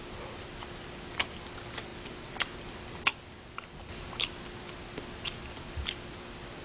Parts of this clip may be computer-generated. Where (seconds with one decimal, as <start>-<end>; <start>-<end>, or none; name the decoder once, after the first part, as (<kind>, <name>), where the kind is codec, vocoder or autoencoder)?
none